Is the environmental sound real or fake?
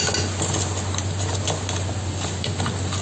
real